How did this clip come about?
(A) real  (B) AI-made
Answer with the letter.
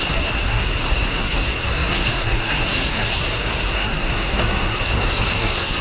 B